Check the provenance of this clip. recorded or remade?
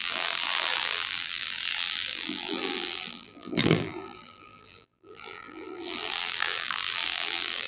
remade